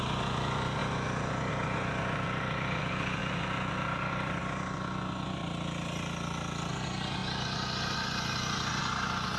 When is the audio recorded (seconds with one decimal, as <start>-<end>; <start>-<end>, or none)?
5.4-6.7